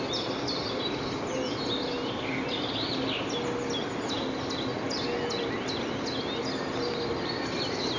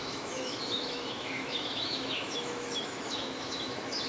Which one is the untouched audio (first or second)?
first